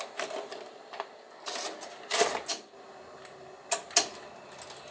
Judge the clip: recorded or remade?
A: recorded